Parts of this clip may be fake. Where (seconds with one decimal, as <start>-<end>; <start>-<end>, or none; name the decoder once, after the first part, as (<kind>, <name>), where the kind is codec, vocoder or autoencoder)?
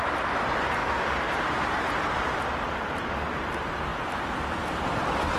none